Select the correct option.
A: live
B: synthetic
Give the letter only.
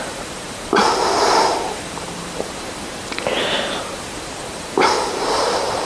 B